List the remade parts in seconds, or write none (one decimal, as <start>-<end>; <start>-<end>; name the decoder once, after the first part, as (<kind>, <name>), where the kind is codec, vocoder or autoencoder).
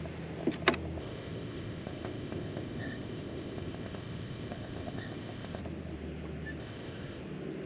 1.0-5.6 (codec, ZipCodec); 6.6-7.2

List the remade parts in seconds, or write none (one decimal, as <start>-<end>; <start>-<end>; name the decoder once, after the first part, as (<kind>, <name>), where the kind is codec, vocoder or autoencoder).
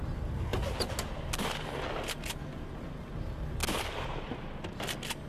none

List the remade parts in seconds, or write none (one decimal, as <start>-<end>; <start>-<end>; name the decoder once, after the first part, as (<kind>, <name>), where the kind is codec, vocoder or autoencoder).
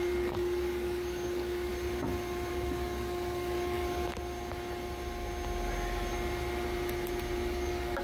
0.0-1.7 (codec, DAC); 2.5-3.8; 7.5-8.0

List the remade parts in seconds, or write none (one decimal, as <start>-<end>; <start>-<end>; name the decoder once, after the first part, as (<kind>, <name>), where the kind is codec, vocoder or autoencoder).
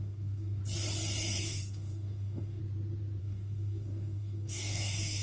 0.0-0.6 (codec, DAC); 1.4-2.6; 3.2-5.2